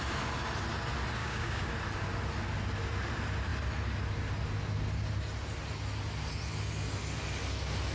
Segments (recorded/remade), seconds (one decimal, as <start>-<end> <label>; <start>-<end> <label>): 0.0-1.2 recorded; 1.2-1.7 remade; 1.7-7.9 recorded